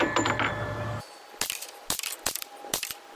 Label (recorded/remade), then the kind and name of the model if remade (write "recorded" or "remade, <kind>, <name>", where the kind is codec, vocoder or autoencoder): recorded